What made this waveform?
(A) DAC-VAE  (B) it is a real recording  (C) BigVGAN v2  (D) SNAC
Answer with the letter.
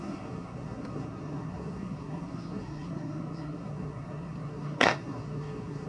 D